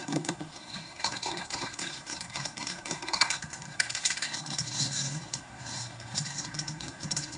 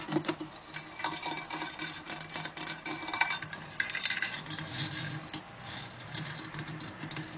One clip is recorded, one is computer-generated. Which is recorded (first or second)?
second